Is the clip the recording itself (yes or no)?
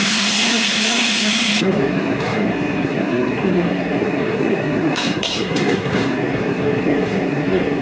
no